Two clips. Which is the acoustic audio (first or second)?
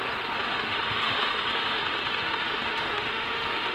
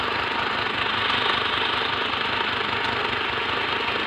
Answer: second